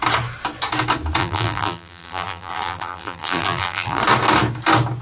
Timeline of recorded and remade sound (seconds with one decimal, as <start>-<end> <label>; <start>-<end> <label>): 0.0-1.2 recorded; 1.2-4.0 remade; 4.0-5.0 recorded